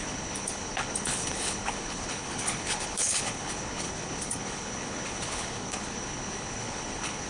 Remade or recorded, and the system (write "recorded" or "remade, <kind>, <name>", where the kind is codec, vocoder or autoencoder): remade, codec, HILCodec